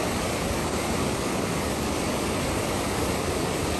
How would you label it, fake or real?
fake